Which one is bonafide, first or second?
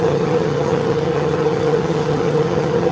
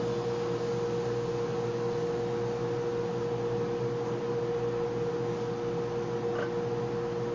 second